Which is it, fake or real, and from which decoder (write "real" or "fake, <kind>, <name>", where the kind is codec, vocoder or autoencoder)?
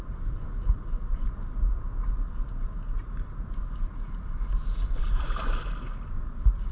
real